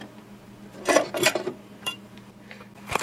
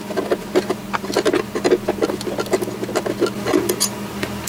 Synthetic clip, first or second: first